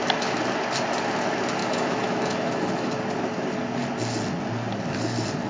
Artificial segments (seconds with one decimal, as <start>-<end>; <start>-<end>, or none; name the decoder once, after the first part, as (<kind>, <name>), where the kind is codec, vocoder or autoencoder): 1.6-2.9 (autoencoder, DAC-VAE)